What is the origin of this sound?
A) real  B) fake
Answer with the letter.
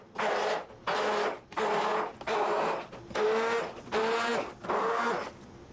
A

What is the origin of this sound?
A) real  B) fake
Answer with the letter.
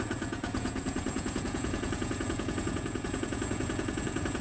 B